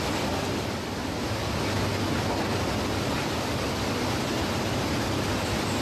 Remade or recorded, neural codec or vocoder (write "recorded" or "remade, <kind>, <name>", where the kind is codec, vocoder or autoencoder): recorded